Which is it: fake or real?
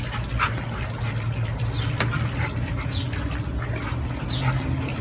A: real